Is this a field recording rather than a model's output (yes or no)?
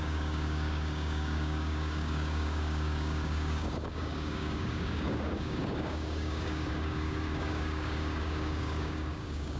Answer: no